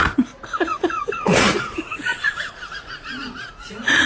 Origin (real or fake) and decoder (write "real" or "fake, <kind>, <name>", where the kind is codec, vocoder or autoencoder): fake, vocoder, Vocos